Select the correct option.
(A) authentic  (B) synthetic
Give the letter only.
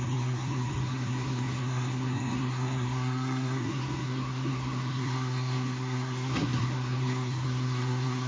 B